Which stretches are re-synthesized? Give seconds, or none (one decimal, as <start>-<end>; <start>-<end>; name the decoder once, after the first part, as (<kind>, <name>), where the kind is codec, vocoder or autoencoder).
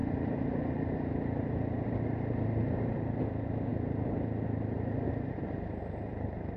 0.0-1.1 (vocoder, BigVGAN v2); 5.8-6.6